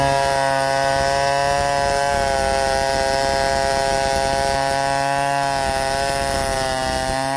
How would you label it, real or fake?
real